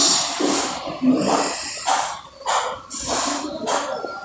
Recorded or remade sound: remade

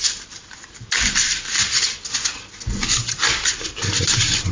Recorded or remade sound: remade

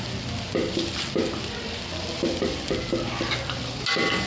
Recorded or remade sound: remade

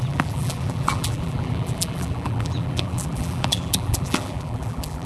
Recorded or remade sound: remade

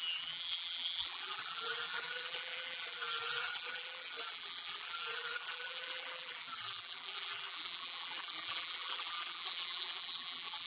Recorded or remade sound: remade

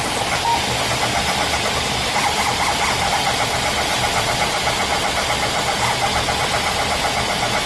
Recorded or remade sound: remade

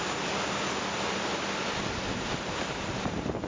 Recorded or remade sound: recorded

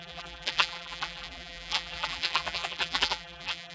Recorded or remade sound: remade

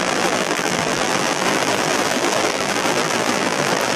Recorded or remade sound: remade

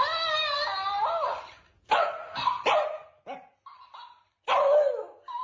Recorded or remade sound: recorded